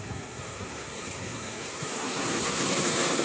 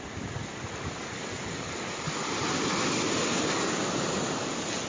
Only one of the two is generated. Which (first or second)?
first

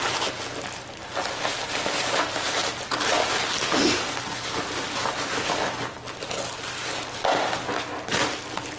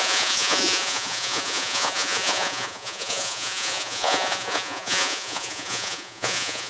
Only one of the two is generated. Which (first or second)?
second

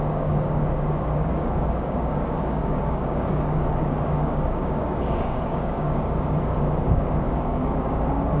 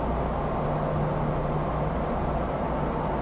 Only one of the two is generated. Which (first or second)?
first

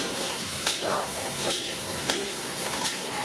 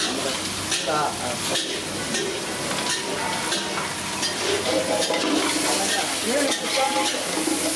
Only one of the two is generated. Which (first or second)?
first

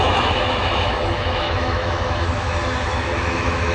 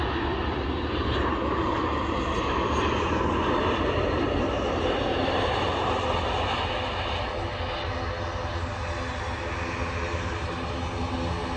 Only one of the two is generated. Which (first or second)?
first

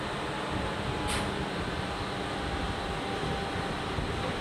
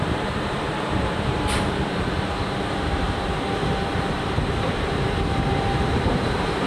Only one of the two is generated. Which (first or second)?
second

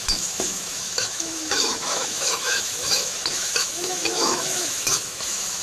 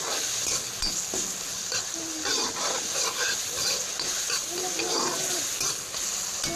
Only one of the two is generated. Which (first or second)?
first